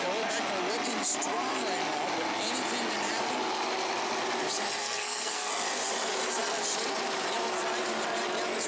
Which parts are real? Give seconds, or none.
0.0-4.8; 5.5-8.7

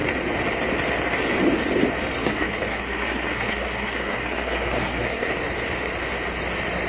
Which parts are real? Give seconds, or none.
0.0-2.2; 5.3-6.9

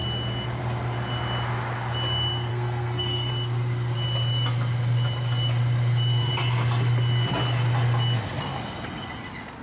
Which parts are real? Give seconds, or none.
0.0-2.5; 3.3-9.6

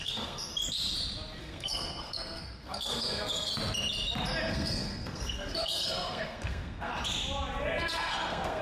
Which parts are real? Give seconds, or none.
0.5-1.4; 3.5-4.5; 6.9-7.6